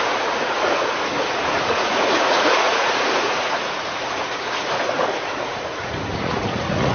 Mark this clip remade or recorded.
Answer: remade